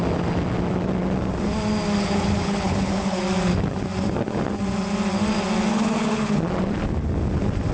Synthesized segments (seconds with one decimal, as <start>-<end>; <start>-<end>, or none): 2.0-3.2; 5.7-6.4